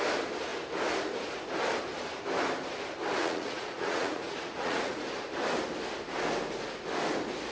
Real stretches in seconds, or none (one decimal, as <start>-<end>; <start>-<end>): 0.0-3.2; 5.1-7.5